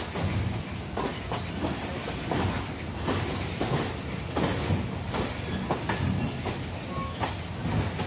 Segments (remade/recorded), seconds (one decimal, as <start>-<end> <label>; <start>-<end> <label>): 0.0-8.1 recorded